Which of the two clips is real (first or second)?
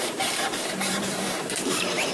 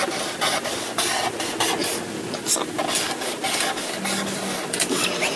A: second